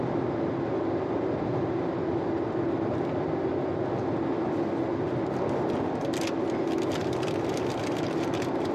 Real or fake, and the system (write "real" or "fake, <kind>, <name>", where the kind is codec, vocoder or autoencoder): real